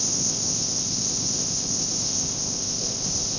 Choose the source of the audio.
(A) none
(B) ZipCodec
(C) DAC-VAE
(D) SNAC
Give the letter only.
B